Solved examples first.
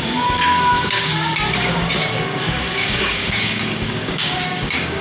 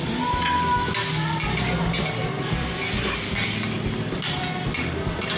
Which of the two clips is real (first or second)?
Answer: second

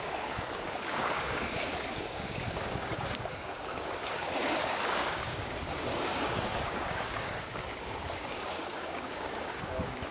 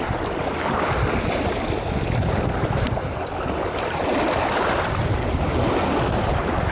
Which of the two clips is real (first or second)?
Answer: second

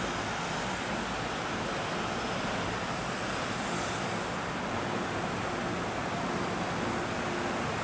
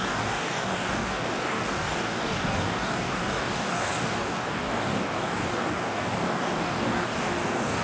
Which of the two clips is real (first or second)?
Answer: first